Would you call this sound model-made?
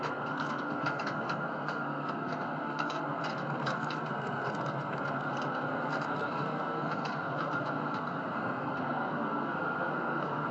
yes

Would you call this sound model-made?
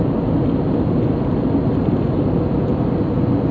no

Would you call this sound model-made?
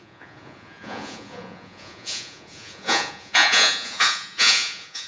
yes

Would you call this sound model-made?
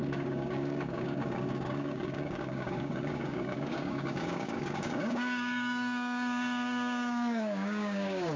yes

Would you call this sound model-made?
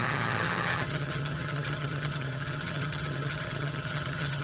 yes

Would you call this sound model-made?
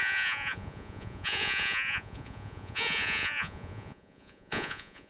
yes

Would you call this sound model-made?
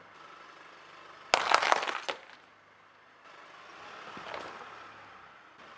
no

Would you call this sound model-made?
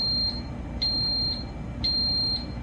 no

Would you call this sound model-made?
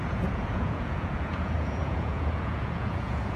yes